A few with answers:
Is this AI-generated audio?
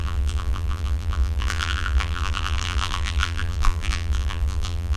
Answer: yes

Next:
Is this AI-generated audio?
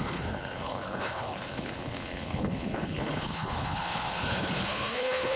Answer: yes